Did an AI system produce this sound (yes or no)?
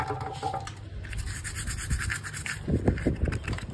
no